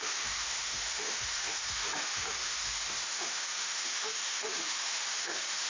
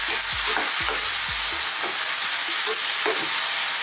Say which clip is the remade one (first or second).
first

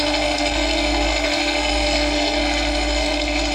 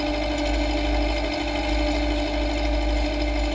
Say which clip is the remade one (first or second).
first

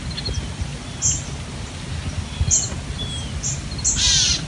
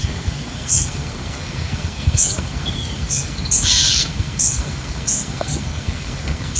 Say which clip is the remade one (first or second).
second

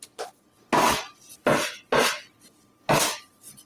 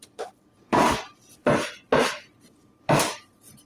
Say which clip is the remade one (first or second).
second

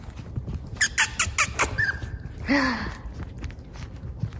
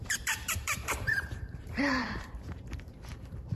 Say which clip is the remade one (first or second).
second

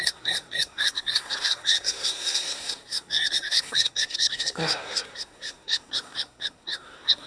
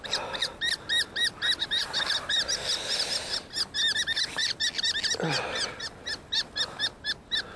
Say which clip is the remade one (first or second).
first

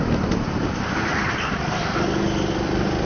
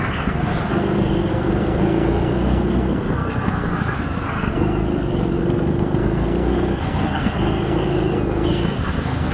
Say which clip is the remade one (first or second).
second